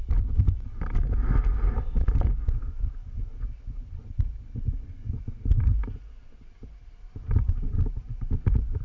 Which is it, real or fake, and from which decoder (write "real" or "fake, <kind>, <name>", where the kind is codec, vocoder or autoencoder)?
real